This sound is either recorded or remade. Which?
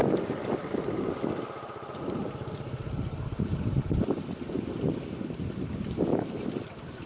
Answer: recorded